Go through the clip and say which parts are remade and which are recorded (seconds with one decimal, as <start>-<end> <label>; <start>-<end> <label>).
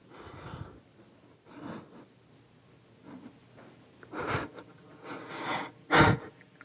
0.0-6.6 recorded